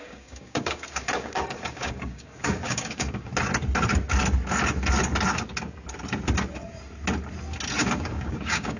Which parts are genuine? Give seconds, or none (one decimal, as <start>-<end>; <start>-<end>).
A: 3.3-7.8